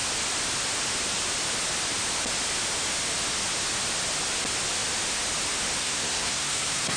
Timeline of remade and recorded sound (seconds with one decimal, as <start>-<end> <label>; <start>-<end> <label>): 0.0-5.8 recorded; 5.8-7.0 remade